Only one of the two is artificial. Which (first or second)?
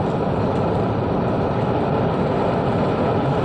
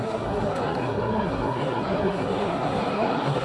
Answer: second